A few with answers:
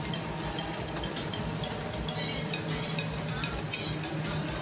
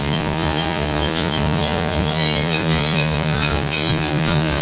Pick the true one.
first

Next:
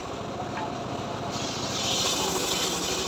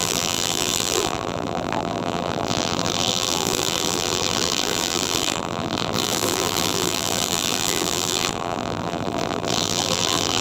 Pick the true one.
first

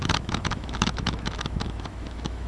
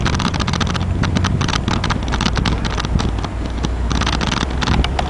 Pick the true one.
second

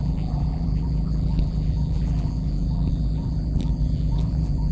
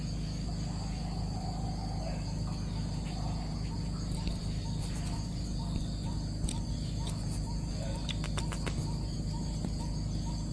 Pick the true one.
second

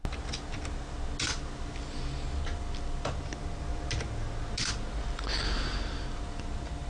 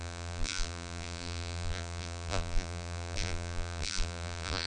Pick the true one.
first